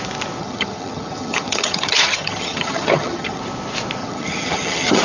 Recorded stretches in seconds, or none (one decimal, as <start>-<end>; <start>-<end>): 0.0-0.4; 3.4-4.0